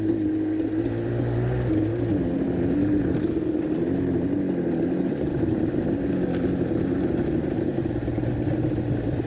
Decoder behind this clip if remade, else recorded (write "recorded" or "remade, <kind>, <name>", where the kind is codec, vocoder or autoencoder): recorded